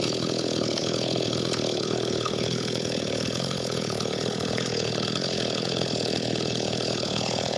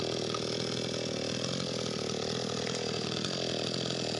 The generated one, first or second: first